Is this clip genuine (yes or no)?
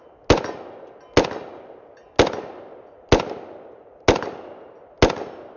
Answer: yes